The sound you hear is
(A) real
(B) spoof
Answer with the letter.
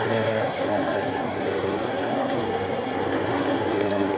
B